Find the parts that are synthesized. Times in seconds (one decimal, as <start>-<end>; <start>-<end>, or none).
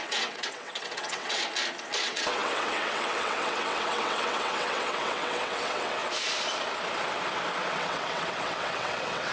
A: 0.0-1.4; 2.0-6.0; 7.7-9.3